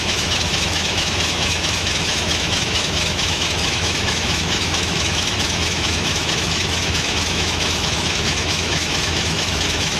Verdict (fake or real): fake